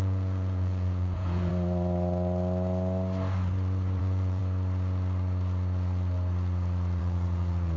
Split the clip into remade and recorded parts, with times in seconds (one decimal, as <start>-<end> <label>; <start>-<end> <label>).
0.0-1.5 remade; 1.5-4.0 recorded; 4.0-4.4 remade; 4.4-7.0 recorded; 7.0-7.8 remade